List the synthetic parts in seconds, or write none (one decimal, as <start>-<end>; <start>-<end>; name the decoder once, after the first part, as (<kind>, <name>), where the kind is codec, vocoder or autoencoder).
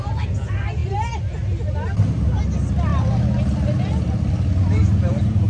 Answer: none